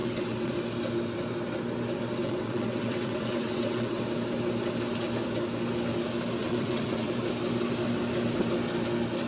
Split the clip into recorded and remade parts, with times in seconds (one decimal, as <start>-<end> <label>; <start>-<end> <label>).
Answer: 0.0-0.5 remade; 0.5-2.2 recorded; 2.2-4.0 remade; 4.0-6.4 recorded; 6.4-7.1 remade; 7.1-9.3 recorded